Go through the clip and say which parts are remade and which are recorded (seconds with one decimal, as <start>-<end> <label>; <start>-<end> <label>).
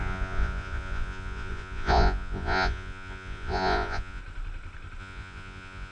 0.0-4.2 remade; 4.2-5.0 recorded; 5.0-5.9 remade